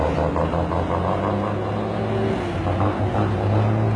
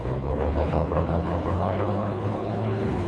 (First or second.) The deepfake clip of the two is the second